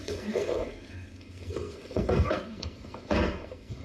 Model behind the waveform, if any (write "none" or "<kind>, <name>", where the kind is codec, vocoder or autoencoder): codec, SNAC